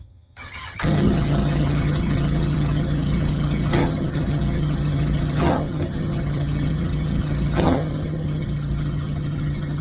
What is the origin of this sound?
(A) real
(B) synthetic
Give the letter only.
B